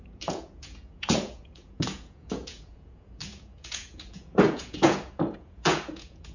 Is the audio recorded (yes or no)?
no